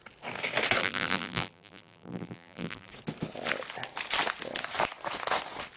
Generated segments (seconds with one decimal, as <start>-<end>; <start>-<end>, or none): 0.8-2.9